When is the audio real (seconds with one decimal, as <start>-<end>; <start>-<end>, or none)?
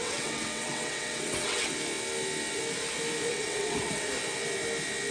1.7-3.3; 4.1-5.1